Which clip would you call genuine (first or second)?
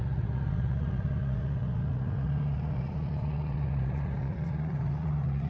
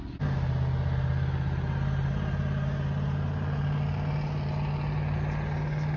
second